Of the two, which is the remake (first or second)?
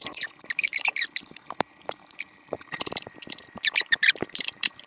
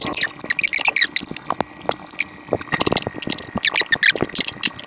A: first